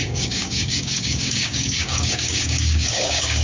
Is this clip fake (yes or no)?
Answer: yes